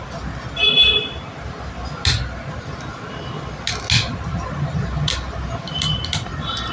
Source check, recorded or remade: recorded